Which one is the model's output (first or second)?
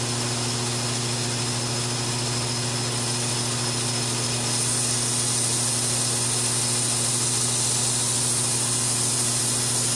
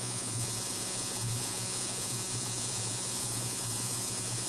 second